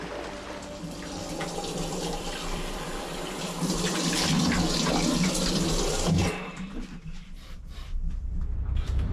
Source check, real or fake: fake